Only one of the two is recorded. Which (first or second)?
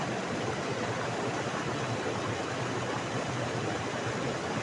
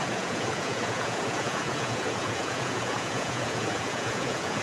first